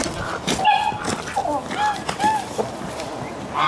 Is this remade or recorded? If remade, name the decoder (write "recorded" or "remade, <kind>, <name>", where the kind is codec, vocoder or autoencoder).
recorded